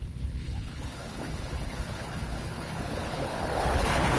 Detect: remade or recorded remade